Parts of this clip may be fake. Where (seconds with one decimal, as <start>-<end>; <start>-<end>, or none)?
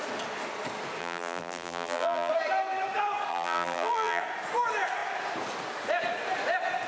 1.0-2.3; 3.3-4.2